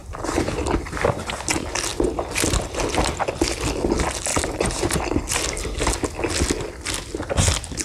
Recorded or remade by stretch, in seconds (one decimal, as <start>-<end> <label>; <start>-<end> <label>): 0.0-4.3 recorded; 4.3-5.0 remade; 5.0-7.8 recorded